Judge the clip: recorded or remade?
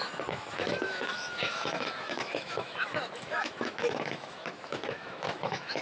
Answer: remade